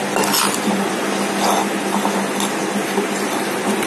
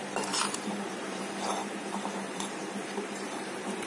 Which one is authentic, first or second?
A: first